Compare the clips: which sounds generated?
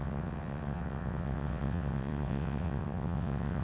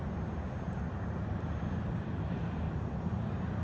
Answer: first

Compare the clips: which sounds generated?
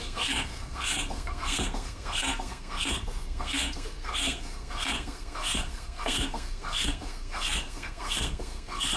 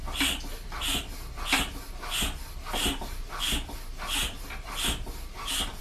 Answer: first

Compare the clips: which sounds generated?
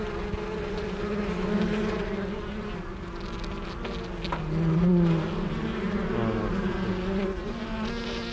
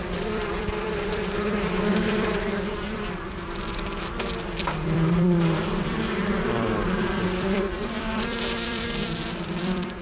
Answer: second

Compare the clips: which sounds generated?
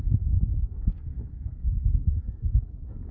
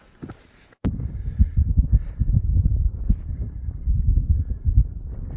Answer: first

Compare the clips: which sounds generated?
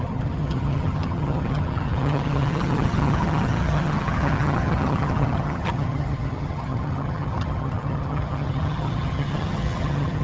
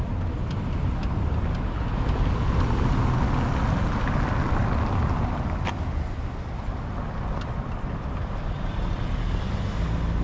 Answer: first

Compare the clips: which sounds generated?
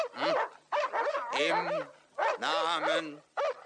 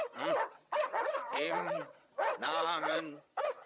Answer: second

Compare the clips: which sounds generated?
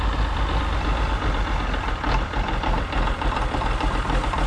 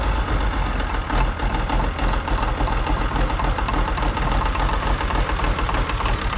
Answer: first